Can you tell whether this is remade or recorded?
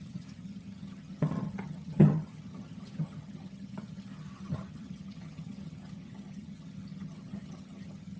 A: remade